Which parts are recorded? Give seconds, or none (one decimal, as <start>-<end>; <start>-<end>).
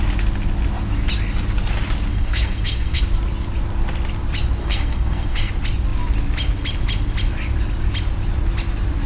0.0-2.1; 3.0-4.6; 5.5-9.1